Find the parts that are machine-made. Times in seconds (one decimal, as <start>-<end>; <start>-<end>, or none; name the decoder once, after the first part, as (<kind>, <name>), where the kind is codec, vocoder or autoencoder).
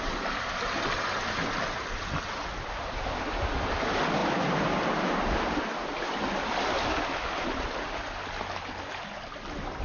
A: none